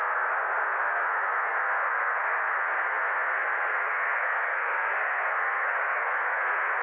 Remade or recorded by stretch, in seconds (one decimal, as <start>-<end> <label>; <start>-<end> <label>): 0.0-6.8 remade